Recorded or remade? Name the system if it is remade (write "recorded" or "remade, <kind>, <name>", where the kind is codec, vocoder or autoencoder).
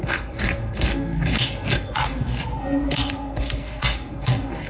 remade, codec, SNAC